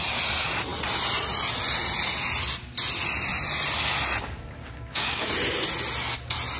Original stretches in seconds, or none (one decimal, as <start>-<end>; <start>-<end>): 0.0-4.6; 5.3-6.6